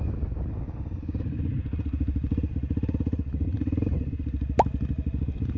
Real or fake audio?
real